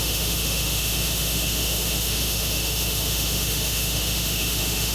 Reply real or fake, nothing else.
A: fake